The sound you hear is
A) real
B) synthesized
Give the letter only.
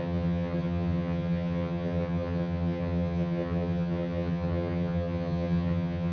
B